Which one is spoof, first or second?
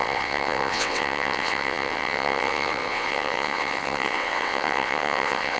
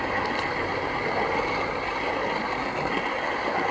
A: first